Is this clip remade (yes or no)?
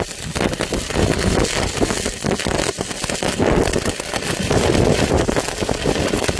no